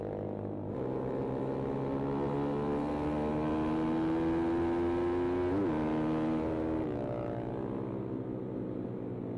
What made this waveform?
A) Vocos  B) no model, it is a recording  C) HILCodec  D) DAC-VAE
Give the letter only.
B